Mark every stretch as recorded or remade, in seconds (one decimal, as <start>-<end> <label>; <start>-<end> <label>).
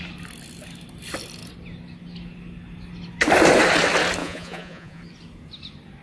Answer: 0.0-4.2 recorded; 4.2-5.0 remade; 5.0-6.0 recorded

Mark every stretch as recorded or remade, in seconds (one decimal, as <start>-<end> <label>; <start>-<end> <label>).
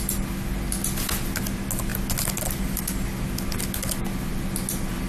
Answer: 0.0-5.1 recorded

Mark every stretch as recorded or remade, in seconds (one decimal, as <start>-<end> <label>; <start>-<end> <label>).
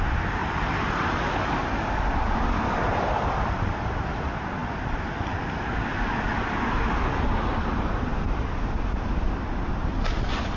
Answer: 0.0-10.6 recorded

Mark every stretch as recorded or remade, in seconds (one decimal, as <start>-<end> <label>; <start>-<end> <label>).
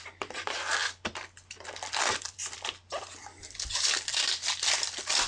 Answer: 0.0-5.3 remade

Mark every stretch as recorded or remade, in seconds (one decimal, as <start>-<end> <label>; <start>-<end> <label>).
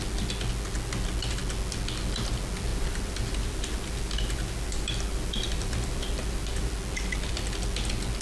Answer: 0.0-2.7 recorded; 2.7-6.7 remade; 6.7-8.2 recorded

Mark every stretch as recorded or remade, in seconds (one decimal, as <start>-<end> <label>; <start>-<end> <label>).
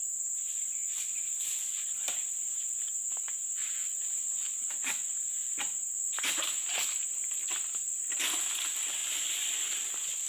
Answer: 0.0-0.8 remade; 0.8-1.9 recorded; 1.9-10.3 remade